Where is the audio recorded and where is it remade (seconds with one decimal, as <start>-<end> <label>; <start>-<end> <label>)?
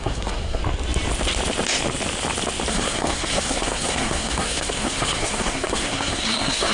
0.0-0.6 remade; 0.6-2.7 recorded; 2.7-6.7 remade